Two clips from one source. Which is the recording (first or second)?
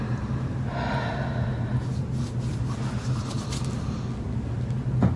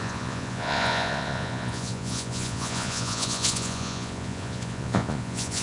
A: first